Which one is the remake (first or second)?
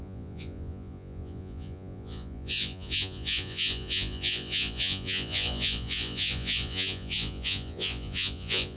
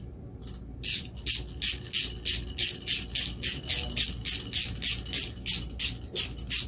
first